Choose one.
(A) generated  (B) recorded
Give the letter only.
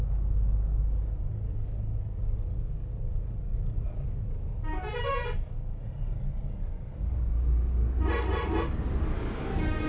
B